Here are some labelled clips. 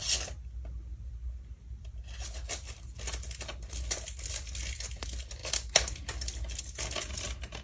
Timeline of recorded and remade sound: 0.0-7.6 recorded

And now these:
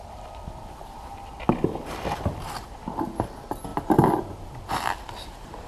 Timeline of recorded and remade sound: 0.0-5.7 recorded

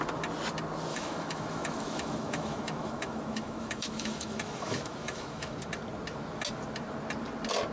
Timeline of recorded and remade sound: 0.0-0.9 recorded; 0.9-5.5 remade; 5.5-7.7 recorded

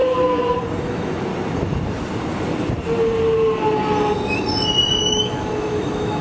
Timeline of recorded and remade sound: 0.0-0.8 recorded; 0.8-1.3 remade; 1.3-5.0 recorded; 5.0-6.2 remade